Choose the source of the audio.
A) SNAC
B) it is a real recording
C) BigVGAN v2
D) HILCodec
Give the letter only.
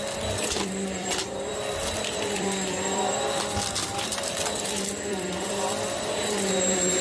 C